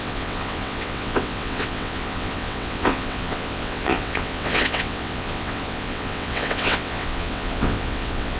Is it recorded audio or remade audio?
remade